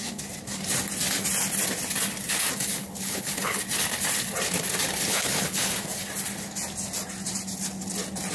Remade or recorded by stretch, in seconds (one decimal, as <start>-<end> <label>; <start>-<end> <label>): 0.0-2.8 recorded; 2.8-3.6 remade; 3.6-5.1 recorded; 5.1-5.7 remade; 5.7-8.3 recorded